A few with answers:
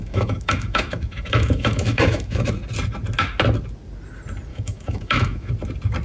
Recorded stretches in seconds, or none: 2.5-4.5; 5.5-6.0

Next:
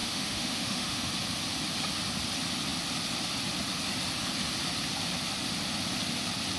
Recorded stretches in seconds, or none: 1.1-6.6

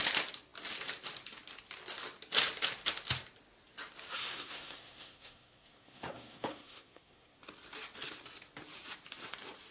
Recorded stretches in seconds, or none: 0.0-4.2; 7.4-9.7